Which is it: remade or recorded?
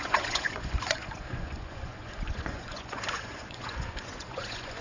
remade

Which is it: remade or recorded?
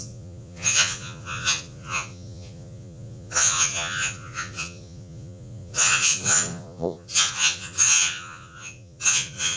remade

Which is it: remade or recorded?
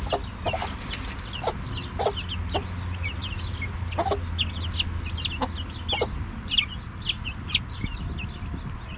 recorded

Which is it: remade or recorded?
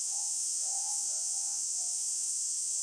remade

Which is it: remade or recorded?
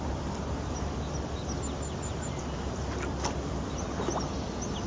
recorded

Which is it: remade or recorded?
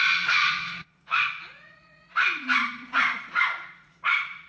remade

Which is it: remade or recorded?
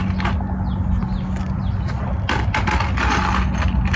recorded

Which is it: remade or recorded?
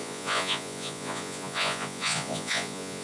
remade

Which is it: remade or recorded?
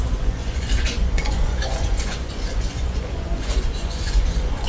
remade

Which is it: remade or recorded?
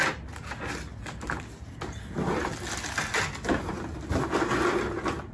recorded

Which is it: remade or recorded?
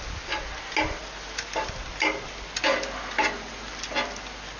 recorded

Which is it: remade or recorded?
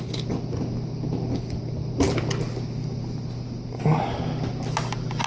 recorded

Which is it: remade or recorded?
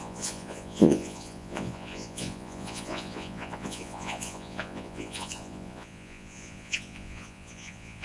remade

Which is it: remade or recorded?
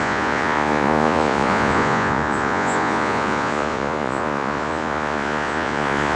remade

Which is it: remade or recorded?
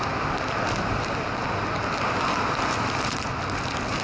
recorded